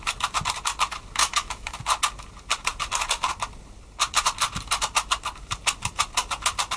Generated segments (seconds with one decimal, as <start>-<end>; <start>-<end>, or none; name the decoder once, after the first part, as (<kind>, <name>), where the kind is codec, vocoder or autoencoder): 1.2-1.8 (autoencoder, DAC-VAE)